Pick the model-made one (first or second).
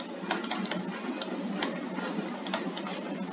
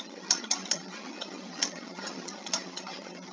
second